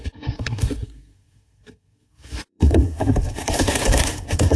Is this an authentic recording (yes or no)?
no